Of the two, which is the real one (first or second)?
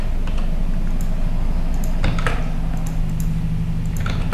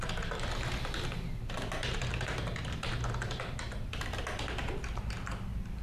first